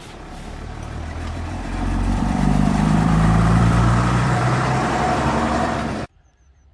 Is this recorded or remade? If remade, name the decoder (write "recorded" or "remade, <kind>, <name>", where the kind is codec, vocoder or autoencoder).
remade, vocoder, BigVGAN v2